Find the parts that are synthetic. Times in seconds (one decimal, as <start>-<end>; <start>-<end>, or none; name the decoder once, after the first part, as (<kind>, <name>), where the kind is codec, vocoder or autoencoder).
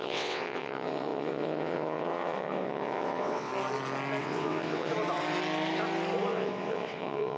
0.0-3.5 (vocoder, WaveNeXt); 4.2-4.9; 6.3-7.4